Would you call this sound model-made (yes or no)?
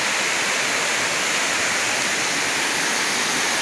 no